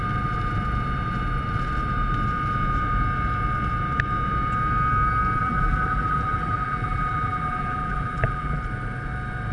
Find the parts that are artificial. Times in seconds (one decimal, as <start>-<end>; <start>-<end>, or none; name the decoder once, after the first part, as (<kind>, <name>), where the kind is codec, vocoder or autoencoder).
5.4-8.6 (vocoder, BigVGAN v2)